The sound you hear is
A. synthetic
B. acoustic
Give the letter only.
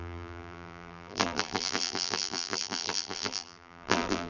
A